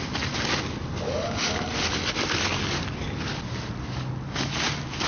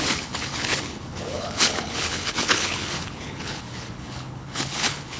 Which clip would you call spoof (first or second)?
second